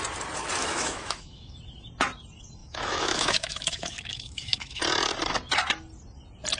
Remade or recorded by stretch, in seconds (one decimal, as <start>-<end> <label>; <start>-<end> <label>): 0.0-0.6 recorded; 0.6-1.5 remade; 1.5-2.6 recorded; 2.6-4.8 remade; 4.8-6.6 recorded